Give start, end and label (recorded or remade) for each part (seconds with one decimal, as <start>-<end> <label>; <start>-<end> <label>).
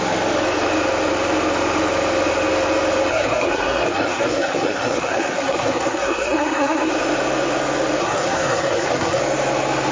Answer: 0.0-3.1 recorded; 3.1-6.9 remade; 6.9-8.0 recorded; 8.0-9.2 remade; 9.2-9.9 recorded